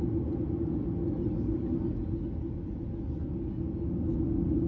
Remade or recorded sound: recorded